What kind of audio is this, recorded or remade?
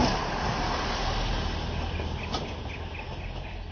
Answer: recorded